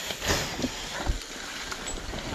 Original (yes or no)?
yes